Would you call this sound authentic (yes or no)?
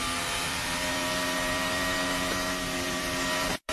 no